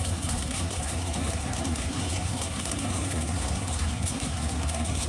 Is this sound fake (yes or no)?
yes